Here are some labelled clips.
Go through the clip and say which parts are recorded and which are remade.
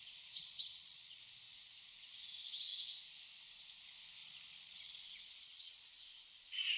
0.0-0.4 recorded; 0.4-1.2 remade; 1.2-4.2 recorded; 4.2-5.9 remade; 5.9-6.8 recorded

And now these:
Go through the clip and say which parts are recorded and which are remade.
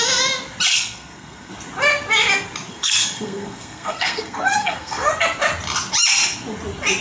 0.0-0.7 recorded; 0.7-1.5 remade; 1.5-2.7 recorded; 2.7-5.1 remade; 5.1-7.0 recorded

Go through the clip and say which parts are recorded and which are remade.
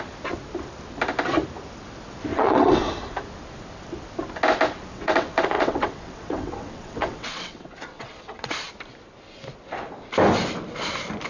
0.0-2.3 recorded; 2.3-2.9 remade; 2.9-4.9 recorded; 4.9-8.5 remade; 8.5-11.3 recorded